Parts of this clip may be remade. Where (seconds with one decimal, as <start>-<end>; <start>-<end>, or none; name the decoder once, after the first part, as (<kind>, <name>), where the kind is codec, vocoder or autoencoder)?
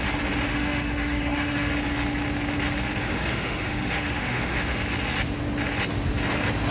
0.5-1.7 (autoencoder, DAC-VAE); 3.0-4.8